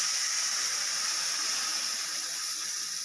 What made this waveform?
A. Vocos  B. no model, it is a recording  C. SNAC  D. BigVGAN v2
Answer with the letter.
B